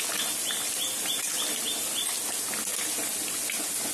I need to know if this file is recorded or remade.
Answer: recorded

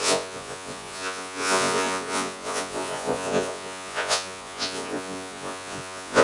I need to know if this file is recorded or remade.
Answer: remade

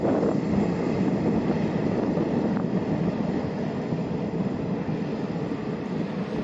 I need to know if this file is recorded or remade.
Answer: recorded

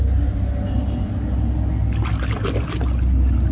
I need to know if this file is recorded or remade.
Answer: recorded